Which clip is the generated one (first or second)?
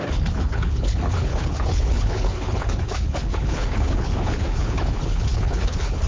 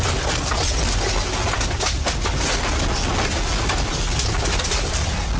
first